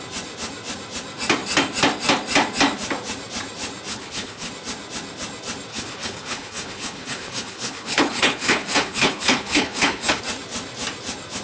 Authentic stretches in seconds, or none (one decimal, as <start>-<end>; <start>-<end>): 0.0-3.9; 4.5-5.7; 10.2-11.4